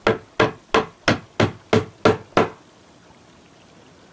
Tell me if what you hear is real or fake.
real